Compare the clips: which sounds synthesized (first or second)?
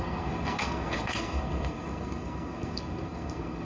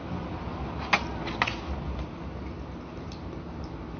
first